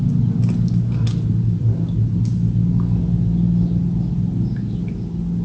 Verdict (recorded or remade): recorded